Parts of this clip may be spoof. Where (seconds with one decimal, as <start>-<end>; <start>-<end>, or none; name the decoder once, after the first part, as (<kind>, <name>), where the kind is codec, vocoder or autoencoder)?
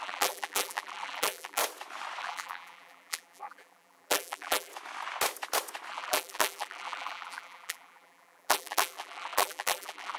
0.0-1.6 (vocoder, BigVGAN v2); 2.2-4.7; 5.9-10.2